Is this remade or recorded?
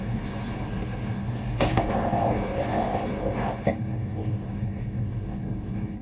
remade